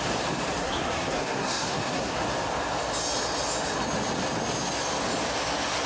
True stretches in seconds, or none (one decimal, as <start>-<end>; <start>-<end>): 0.0-0.6; 2.2-5.9